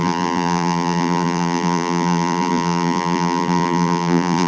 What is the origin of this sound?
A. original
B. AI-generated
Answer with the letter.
B